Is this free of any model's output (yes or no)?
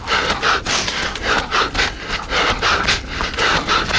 yes